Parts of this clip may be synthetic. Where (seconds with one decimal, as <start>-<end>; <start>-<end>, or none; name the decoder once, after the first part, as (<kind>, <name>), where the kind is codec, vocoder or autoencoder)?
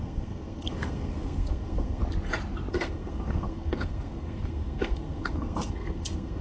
0.0-2.0 (codec, SNAC); 2.7-6.4